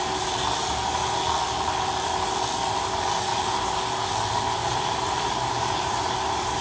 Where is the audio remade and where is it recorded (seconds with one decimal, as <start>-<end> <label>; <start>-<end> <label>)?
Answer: 0.0-1.0 remade; 1.0-2.8 recorded; 2.8-3.3 remade; 3.3-4.7 recorded; 4.7-6.6 remade